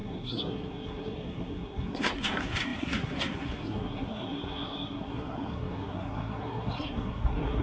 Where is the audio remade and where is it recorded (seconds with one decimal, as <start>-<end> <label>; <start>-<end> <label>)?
0.0-7.6 remade